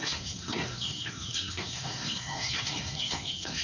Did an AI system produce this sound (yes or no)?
yes